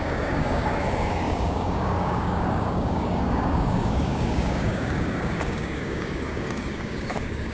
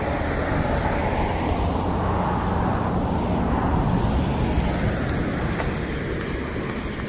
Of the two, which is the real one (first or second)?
second